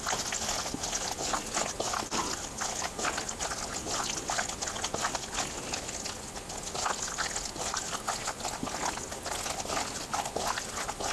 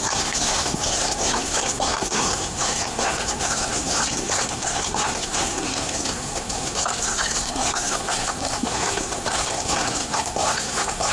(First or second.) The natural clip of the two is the first